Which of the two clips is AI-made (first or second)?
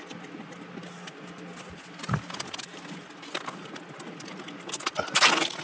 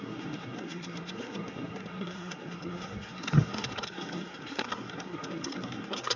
second